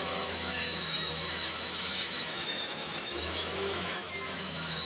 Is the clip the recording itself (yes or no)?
no